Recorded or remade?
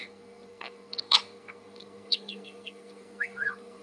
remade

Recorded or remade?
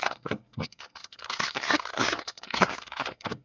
remade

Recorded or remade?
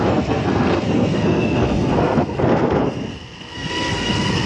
remade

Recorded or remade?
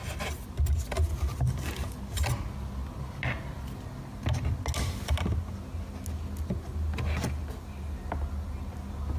recorded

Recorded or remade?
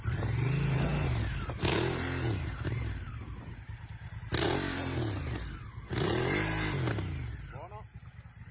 recorded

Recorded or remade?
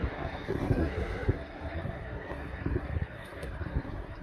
remade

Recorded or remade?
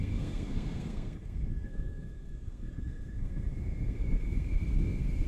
remade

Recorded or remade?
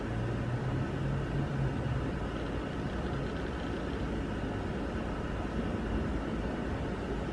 recorded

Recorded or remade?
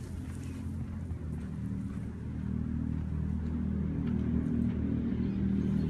recorded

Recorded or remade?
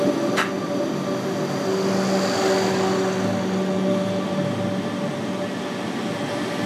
recorded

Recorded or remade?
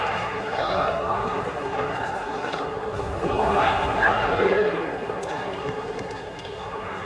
remade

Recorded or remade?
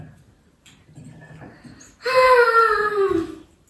recorded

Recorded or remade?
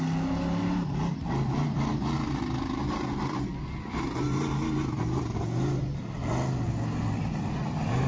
recorded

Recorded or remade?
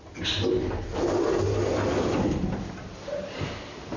recorded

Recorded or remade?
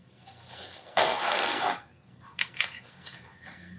remade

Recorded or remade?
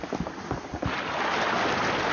recorded